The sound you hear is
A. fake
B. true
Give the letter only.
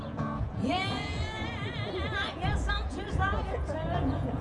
A